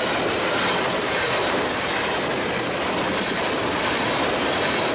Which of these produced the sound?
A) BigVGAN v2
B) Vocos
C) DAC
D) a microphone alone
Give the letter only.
D